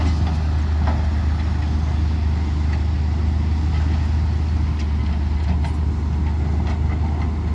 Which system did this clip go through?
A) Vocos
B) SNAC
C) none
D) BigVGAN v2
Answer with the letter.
C